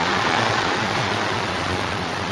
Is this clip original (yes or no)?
no